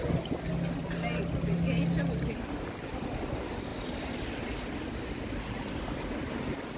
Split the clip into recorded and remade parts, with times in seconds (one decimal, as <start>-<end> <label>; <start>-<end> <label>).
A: 0.0-6.8 recorded